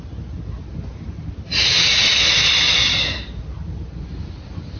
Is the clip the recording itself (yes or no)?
yes